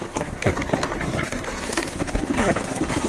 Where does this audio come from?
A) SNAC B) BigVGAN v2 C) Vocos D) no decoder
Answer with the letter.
A